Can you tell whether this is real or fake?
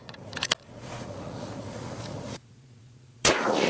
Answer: fake